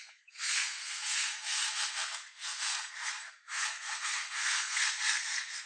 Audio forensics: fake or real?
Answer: fake